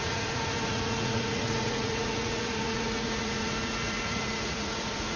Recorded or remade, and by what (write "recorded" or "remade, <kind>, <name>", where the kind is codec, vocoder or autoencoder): remade, vocoder, Vocos